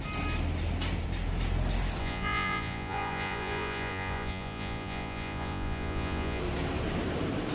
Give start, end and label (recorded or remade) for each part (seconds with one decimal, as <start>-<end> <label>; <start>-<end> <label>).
0.0-2.0 recorded; 2.0-6.4 remade; 6.4-7.5 recorded